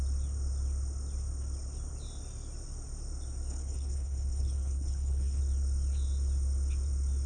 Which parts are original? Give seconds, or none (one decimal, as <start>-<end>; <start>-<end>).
0.0-3.5; 5.4-7.3